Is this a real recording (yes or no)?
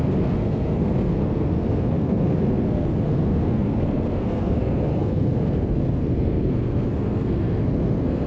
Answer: no